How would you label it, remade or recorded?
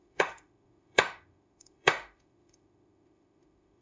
remade